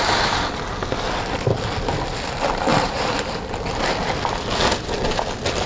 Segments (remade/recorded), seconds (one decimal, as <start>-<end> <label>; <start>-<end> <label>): 0.0-5.7 recorded